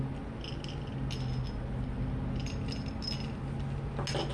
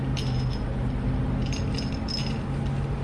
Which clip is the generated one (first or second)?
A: second